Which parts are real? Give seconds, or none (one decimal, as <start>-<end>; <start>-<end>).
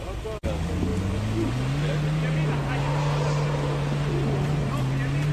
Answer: 0.0-5.3